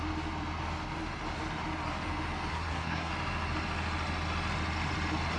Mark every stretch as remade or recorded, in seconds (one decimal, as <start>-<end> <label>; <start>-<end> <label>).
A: 0.0-2.5 recorded; 2.5-3.1 remade; 3.1-5.4 recorded